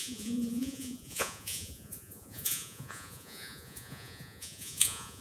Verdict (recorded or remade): remade